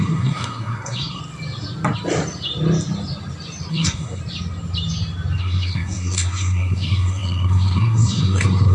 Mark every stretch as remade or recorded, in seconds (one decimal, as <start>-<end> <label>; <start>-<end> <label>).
0.0-1.2 remade; 1.2-3.7 recorded; 3.7-4.2 remade; 4.2-5.4 recorded; 5.4-8.7 remade